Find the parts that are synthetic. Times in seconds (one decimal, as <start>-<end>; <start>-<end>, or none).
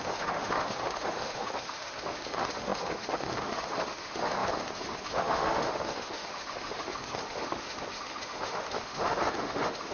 0.0-9.9